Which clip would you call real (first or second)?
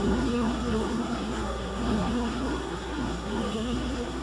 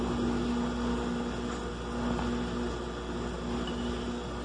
second